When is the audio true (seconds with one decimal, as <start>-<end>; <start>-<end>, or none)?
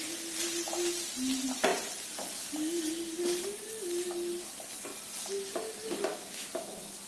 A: 0.0-6.1